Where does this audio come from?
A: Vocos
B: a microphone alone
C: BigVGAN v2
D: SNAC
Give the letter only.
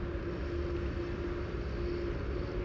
B